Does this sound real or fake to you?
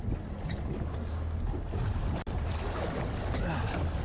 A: real